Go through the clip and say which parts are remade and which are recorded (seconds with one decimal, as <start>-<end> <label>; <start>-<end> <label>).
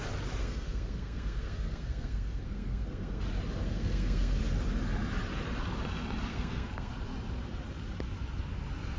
0.0-0.4 recorded; 0.4-3.2 remade; 3.2-3.6 recorded; 3.6-4.4 remade; 4.4-6.3 recorded; 6.3-6.9 remade; 6.9-9.0 recorded